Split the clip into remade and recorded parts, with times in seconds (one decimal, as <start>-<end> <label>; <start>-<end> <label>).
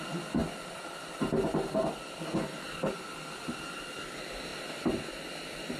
0.0-5.8 recorded